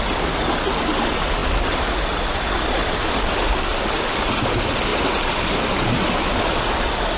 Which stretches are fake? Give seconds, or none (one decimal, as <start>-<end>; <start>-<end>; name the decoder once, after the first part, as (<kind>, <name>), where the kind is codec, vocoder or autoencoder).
none